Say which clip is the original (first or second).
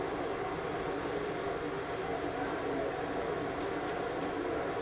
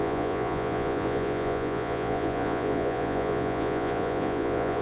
first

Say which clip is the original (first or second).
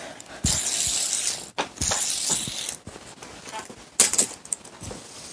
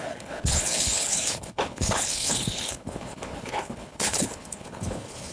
first